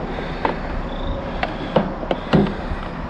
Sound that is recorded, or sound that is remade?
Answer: recorded